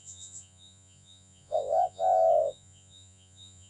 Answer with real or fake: fake